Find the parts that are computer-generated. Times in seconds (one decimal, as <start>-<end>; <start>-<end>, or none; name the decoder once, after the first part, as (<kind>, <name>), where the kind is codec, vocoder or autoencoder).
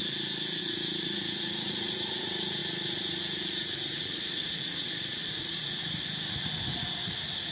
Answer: 0.6-5.8 (vocoder, Vocos)